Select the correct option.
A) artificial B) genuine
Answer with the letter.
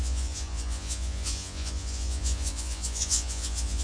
A